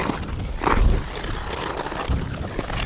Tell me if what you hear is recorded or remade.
recorded